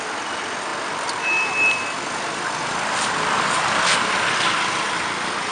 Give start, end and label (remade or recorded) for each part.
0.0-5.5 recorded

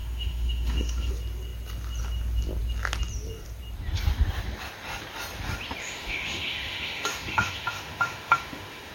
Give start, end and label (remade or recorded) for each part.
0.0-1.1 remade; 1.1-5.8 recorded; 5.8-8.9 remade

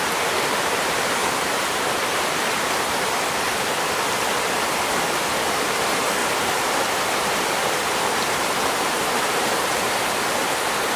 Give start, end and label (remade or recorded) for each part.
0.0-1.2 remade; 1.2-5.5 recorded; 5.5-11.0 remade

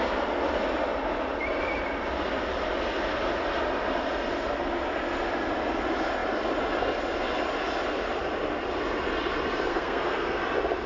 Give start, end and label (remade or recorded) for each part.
0.0-9.7 recorded; 9.7-10.4 remade; 10.4-10.9 recorded

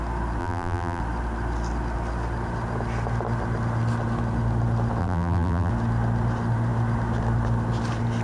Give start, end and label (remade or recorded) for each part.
0.0-0.4 recorded; 0.4-1.0 remade; 1.0-5.0 recorded; 5.0-5.7 remade; 5.7-8.2 recorded

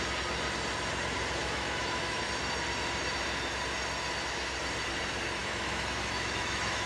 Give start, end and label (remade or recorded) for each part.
0.0-1.4 recorded; 1.4-2.2 remade; 2.2-5.4 recorded; 5.4-6.9 remade

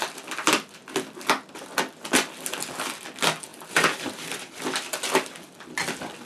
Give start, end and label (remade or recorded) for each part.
0.0-3.5 recorded; 3.5-4.6 remade; 4.6-6.3 recorded

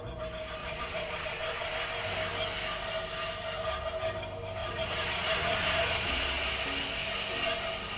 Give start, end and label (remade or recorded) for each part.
0.0-0.6 recorded; 0.6-1.7 remade; 1.7-4.6 recorded; 4.6-6.4 remade; 6.4-8.0 recorded